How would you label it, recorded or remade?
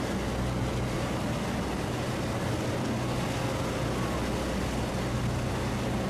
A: recorded